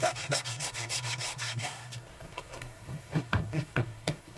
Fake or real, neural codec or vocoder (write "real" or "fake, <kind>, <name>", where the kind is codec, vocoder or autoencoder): fake, codec, SNAC